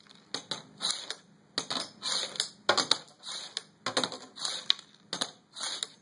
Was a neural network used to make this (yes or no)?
no